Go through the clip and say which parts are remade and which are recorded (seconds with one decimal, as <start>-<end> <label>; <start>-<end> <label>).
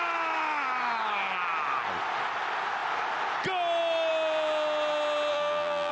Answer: 0.0-5.3 recorded; 5.3-5.9 remade